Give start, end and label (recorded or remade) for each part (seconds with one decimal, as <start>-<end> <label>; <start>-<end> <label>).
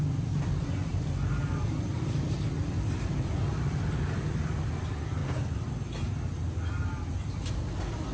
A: 0.0-5.2 remade; 5.2-7.5 recorded; 7.5-8.1 remade